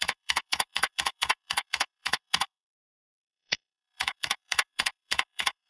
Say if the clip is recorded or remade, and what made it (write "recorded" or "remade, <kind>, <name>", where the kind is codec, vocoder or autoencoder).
remade, codec, SNAC